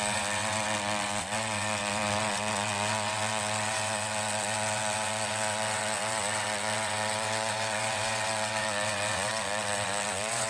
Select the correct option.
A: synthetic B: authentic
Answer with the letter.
A